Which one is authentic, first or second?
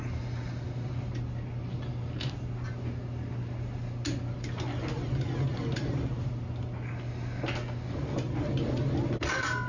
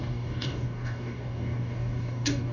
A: first